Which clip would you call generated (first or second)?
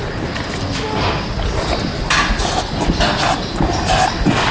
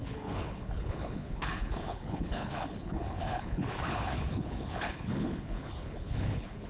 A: second